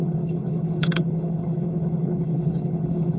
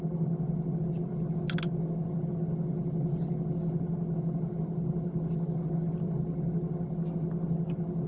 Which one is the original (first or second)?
second